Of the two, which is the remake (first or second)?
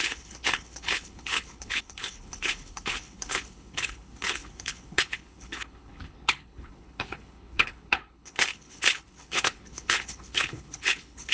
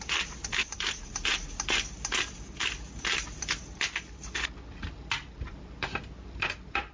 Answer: first